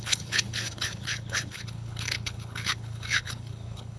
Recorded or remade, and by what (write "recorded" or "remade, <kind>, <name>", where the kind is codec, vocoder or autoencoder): remade, codec, HILCodec